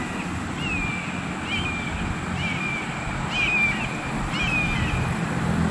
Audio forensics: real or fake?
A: real